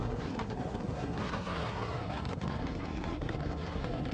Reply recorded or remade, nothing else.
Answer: remade